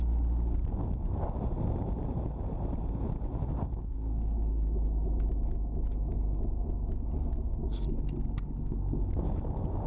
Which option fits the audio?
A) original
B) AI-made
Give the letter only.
A